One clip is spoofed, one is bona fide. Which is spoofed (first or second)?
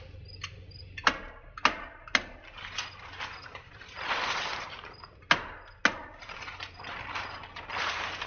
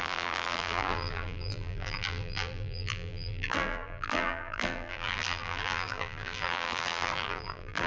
second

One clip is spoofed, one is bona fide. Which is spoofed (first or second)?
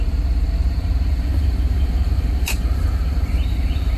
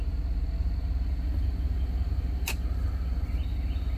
first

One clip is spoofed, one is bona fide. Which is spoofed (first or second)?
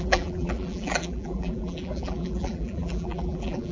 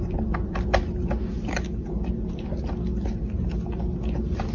first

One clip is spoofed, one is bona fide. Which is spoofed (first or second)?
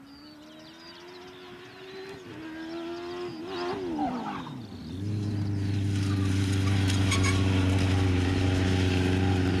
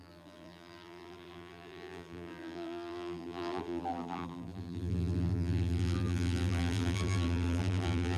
second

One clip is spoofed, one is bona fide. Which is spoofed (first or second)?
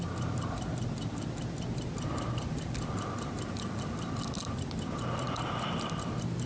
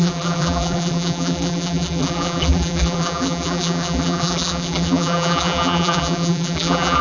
second